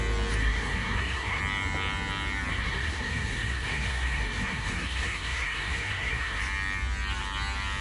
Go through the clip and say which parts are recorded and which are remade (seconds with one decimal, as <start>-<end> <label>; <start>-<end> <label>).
0.0-0.4 recorded; 0.4-1.4 remade; 1.4-2.5 recorded; 2.5-6.4 remade; 6.4-7.8 recorded